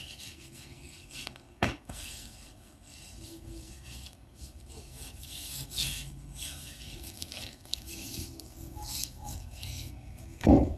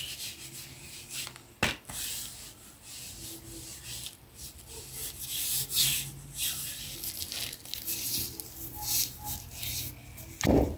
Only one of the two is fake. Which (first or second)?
first